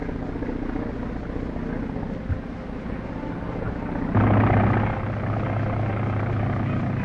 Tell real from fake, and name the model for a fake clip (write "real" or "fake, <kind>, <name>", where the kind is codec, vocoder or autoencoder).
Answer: real